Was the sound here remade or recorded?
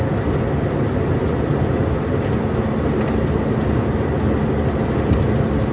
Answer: recorded